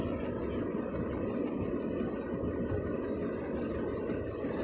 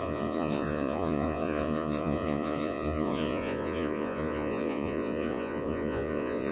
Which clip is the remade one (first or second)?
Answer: second